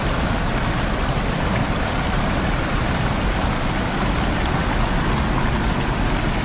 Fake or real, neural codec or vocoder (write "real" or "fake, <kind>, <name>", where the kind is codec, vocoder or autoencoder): real